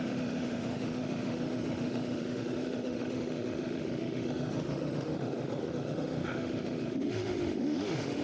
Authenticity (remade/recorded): remade